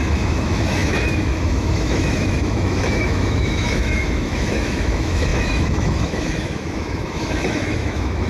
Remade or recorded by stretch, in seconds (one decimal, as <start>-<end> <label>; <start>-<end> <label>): 0.0-8.3 remade